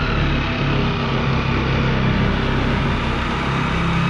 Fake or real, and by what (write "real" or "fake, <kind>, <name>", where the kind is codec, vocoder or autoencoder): real